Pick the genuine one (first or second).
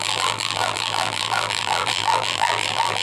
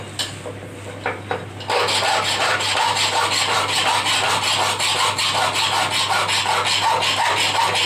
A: second